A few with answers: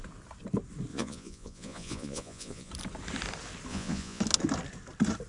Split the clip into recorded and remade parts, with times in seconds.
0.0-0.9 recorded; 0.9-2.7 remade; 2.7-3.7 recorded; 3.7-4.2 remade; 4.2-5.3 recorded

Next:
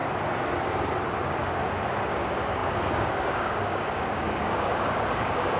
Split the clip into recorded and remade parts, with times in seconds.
0.0-1.2 recorded; 1.2-1.6 remade; 1.6-2.1 recorded; 2.1-5.6 remade